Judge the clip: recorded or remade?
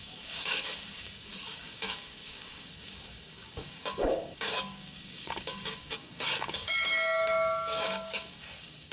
remade